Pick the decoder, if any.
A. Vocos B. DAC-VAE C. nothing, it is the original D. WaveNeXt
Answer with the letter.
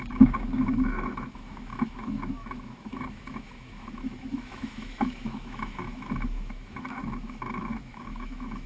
B